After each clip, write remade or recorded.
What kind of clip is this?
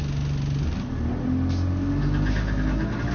recorded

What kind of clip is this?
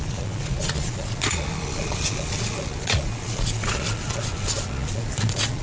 remade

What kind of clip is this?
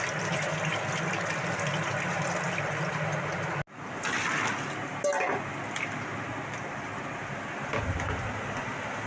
recorded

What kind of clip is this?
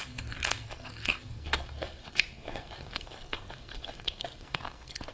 remade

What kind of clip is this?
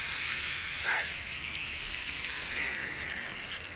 remade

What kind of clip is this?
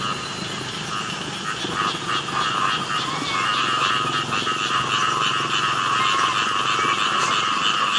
recorded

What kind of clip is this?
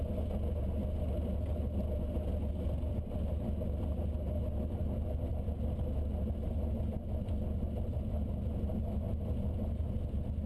recorded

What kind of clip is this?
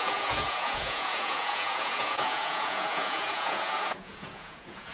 remade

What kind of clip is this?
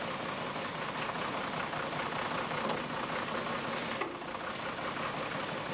recorded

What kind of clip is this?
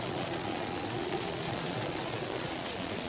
remade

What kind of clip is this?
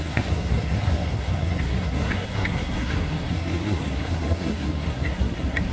remade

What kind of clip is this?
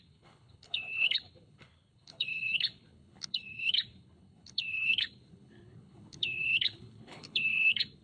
remade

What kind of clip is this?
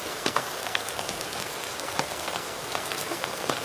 remade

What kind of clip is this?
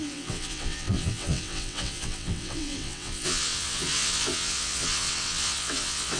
remade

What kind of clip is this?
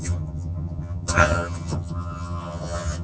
remade